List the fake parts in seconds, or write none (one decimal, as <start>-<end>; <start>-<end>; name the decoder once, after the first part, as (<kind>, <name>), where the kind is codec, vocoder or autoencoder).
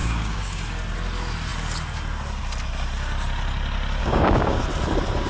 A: 0.0-0.6 (codec, DAC); 4.0-4.6